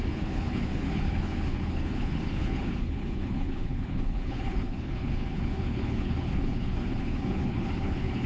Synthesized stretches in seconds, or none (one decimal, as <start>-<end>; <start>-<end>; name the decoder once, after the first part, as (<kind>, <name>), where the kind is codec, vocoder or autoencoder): 0.0-8.3 (codec, HILCodec)